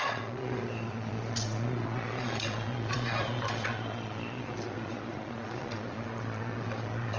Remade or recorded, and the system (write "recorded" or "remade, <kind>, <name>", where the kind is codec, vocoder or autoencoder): remade, vocoder, Vocos